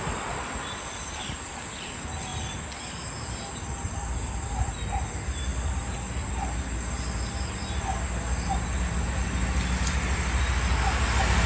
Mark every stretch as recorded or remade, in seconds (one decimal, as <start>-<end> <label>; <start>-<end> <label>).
0.0-11.5 recorded